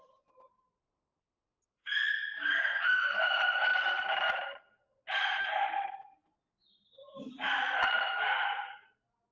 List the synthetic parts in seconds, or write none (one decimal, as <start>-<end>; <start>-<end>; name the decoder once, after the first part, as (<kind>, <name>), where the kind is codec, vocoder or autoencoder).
none